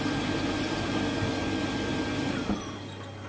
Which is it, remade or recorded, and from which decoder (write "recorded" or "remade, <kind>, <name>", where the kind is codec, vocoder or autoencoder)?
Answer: recorded